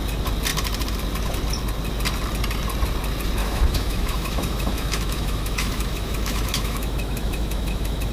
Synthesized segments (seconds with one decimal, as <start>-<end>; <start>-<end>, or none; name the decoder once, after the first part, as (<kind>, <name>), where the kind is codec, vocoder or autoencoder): 3.4-8.1 (autoencoder, DAC-VAE)